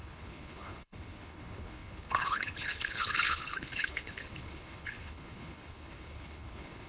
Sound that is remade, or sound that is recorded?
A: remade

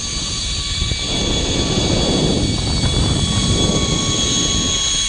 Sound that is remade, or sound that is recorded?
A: recorded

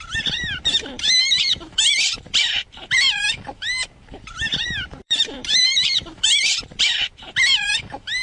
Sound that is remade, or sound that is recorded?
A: remade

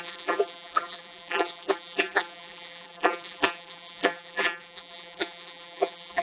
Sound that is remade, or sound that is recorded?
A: remade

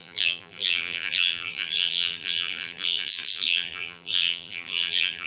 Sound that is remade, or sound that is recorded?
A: remade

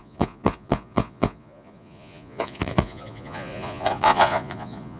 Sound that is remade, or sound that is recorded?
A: remade